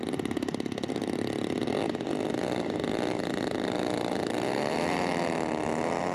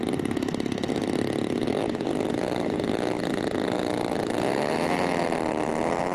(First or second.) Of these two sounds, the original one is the second